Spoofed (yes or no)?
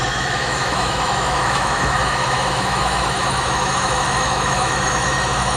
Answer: yes